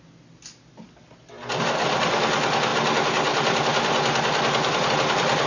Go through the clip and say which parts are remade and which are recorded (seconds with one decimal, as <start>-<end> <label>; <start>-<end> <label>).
0.0-5.5 recorded